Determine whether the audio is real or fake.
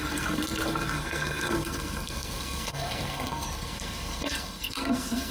fake